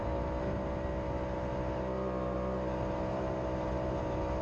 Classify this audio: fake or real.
real